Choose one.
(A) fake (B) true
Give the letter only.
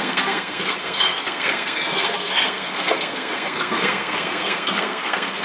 A